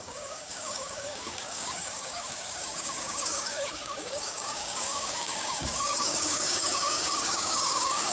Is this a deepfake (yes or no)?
yes